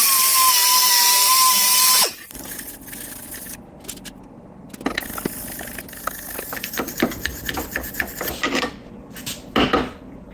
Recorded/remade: recorded